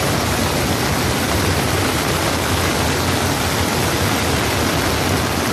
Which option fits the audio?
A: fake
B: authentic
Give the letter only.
B